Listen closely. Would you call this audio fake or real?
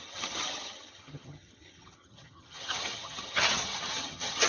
fake